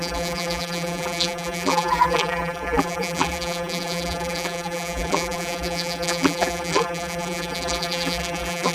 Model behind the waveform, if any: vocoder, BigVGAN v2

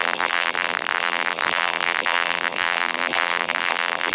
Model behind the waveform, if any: vocoder, BigVGAN v2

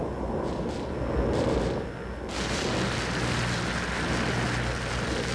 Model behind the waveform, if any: none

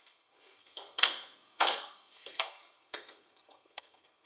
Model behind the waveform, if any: codec, SNAC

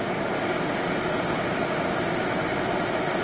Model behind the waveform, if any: none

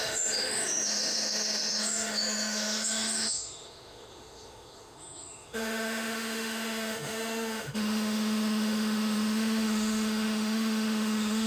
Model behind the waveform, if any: autoencoder, DAC-VAE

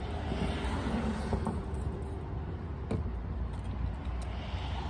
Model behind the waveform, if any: none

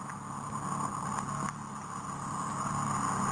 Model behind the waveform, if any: none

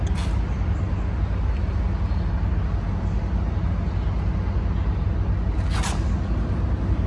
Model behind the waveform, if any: none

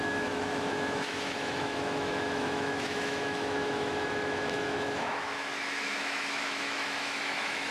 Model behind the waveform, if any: autoencoder, DAC-VAE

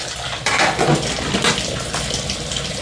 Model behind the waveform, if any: none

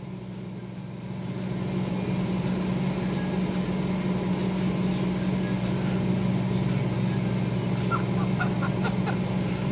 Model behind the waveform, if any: none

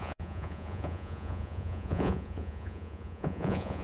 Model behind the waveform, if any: vocoder, Vocos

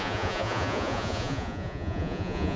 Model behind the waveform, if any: vocoder, Vocos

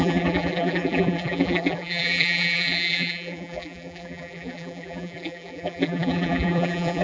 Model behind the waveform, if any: vocoder, BigVGAN v2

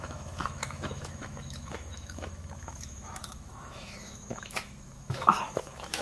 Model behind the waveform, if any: autoencoder, DAC-VAE